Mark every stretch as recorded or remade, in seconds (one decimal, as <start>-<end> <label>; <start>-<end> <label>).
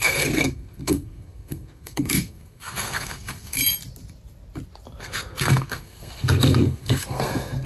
0.0-3.6 remade; 3.6-5.0 recorded; 5.0-7.7 remade